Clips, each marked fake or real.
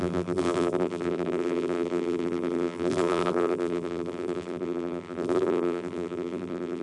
fake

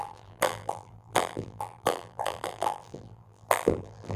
fake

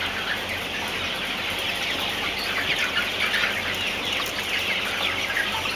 real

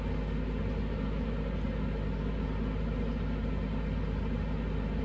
real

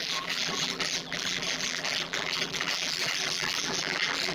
fake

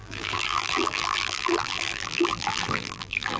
fake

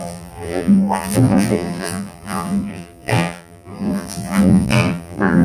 fake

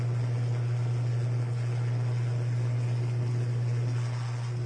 real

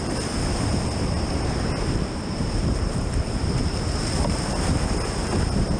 fake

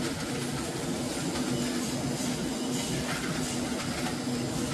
real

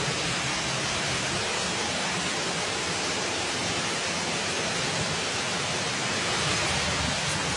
fake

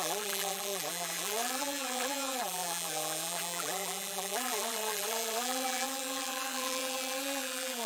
fake